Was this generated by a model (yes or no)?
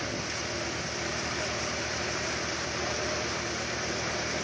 no